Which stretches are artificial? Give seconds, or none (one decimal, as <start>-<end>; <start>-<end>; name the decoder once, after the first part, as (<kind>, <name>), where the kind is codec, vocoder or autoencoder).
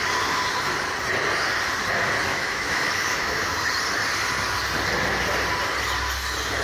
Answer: 2.3-3.5 (autoencoder, DAC-VAE)